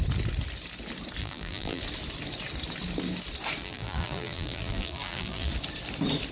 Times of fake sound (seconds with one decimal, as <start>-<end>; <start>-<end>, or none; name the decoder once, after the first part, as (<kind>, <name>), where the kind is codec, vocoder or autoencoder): 1.2-1.8 (vocoder, BigVGAN v2); 3.6-5.5